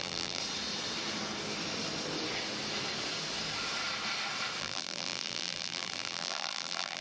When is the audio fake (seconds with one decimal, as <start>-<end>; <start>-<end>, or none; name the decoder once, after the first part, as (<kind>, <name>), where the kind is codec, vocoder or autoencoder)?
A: 0.0-0.4 (vocoder, BigVGAN v2); 4.6-7.0